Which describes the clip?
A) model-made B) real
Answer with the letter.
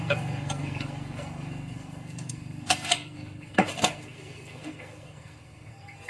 A